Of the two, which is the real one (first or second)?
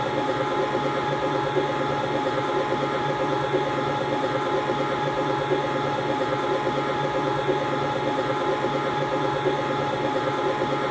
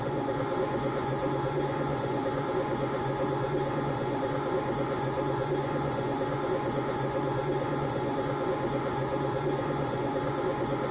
first